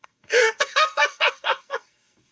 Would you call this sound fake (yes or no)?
yes